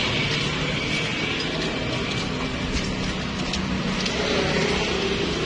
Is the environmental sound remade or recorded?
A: recorded